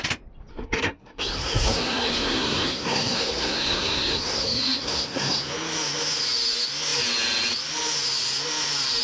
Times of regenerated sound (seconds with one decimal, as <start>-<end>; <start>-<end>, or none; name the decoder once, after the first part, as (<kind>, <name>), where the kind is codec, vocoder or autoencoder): 0.5-5.5 (codec, SNAC)